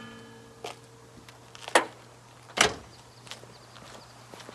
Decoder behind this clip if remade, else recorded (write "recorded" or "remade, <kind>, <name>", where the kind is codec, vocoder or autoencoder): recorded